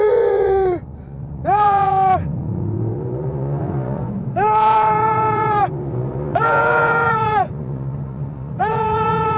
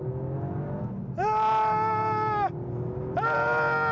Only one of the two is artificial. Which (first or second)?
first